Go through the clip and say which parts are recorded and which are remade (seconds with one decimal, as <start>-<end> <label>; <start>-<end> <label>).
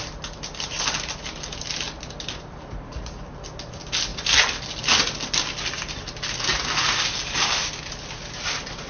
0.0-8.9 recorded